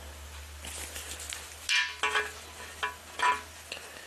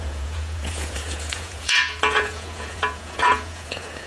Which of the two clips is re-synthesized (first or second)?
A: second